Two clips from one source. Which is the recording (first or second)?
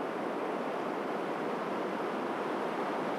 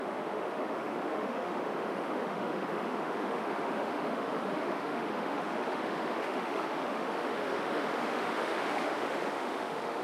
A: first